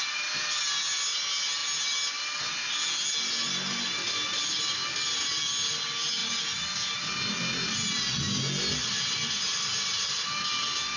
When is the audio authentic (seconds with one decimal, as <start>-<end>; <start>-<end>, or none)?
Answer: 0.0-11.0